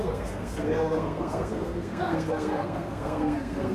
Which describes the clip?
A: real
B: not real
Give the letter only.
B